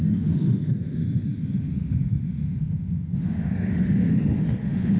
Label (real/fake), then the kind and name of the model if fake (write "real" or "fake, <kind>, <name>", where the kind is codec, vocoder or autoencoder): fake, autoencoder, DAC-VAE